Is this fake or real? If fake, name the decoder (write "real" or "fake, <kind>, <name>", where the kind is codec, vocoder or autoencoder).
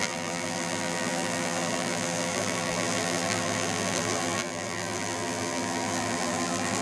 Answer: fake, vocoder, BigVGAN v2